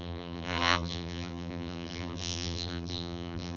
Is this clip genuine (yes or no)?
no